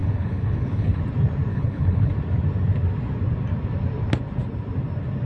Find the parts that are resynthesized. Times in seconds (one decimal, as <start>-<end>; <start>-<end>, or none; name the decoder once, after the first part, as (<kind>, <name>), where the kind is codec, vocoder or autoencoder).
0.0-1.0 (codec, HILCodec); 1.5-2.1